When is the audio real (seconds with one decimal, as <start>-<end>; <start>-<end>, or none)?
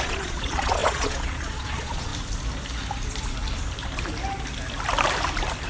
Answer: 2.1-5.7